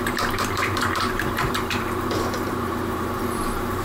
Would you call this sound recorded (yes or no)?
no